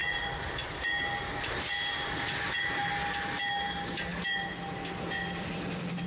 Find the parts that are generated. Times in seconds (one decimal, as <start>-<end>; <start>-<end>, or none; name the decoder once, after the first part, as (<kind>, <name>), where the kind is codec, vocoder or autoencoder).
none